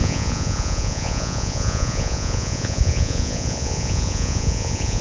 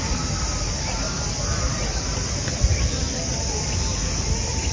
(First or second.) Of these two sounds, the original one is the second